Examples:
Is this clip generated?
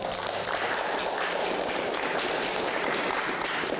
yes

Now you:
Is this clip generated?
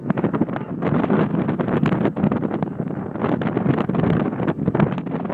no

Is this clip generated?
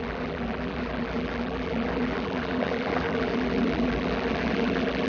yes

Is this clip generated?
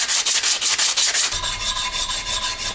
no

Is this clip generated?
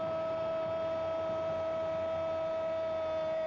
no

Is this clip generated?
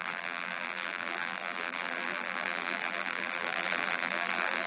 yes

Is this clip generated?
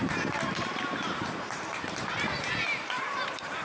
yes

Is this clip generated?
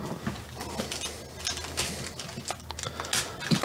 no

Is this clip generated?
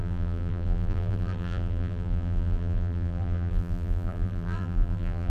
yes